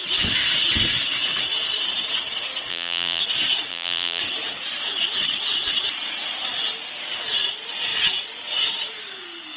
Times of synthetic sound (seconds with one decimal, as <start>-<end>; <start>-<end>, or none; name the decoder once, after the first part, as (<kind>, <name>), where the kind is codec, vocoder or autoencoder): 2.7-3.2 (vocoder, BigVGAN v2); 3.7-4.2